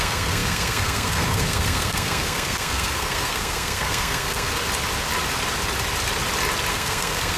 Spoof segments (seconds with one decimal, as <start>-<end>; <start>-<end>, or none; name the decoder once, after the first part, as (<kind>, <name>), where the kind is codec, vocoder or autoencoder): 0.0-4.5 (codec, SNAC); 6.7-7.4